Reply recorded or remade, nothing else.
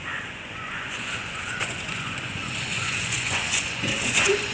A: remade